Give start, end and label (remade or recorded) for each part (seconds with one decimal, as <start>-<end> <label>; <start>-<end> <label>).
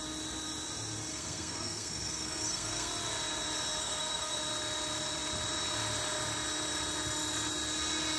0.0-1.1 recorded; 1.1-2.9 remade; 2.9-3.8 recorded; 3.8-4.4 remade; 4.4-8.2 recorded